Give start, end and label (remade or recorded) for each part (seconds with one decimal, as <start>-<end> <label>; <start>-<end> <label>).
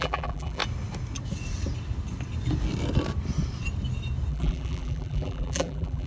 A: 0.0-0.6 remade; 0.6-4.3 recorded; 4.3-6.1 remade